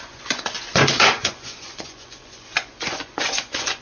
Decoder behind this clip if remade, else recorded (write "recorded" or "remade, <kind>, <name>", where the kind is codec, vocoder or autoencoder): remade, vocoder, Vocos